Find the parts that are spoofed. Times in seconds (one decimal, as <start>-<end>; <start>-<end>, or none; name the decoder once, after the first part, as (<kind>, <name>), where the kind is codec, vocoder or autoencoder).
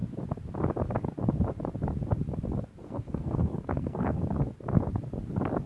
2.8-4.2 (codec, SNAC)